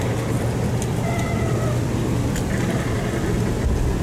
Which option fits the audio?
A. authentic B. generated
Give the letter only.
A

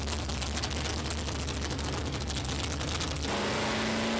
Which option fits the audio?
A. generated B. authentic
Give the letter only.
B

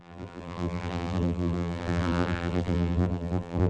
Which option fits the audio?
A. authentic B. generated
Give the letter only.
B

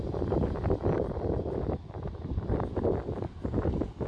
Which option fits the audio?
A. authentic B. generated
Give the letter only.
A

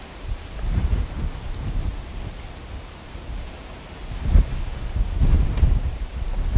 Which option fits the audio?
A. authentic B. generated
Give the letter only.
B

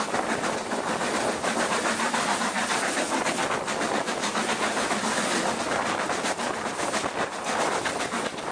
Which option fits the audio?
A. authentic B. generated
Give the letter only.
B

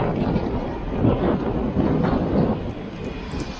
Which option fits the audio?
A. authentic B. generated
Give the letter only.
A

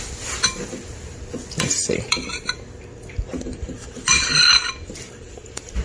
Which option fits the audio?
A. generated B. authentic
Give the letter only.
A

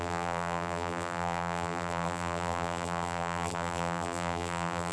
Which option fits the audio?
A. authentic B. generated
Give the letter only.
B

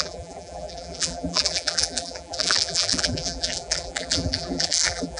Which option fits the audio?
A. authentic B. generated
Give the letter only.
B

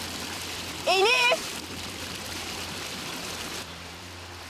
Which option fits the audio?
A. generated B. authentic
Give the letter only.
A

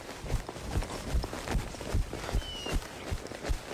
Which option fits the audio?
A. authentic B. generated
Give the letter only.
A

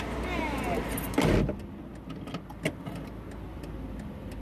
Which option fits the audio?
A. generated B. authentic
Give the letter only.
B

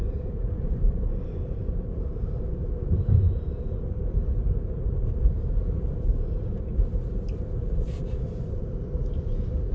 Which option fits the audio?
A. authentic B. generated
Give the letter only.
B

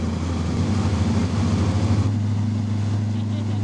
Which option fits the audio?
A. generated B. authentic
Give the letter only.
B